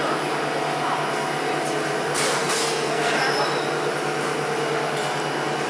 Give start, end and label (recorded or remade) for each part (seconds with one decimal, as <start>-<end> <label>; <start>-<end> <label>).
0.0-2.3 recorded; 2.3-3.2 remade; 3.2-5.7 recorded